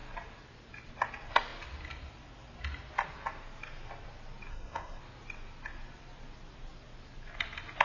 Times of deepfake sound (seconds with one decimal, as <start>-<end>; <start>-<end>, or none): 4.5-5.0